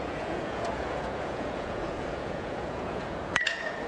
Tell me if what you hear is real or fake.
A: fake